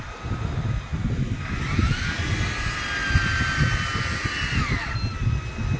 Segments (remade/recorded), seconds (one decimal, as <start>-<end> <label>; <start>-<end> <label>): 0.0-5.8 recorded

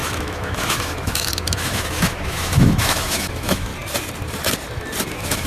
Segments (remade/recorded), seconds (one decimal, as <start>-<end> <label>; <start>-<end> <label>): 0.0-3.7 remade; 3.7-5.1 recorded; 5.1-5.5 remade